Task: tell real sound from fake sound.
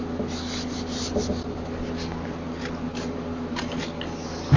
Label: real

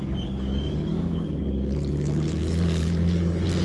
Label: fake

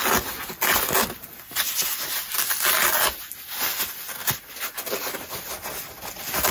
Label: real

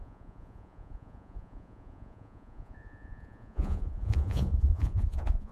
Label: fake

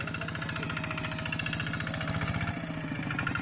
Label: real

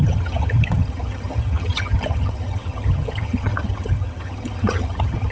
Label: fake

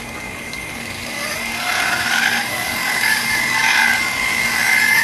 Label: fake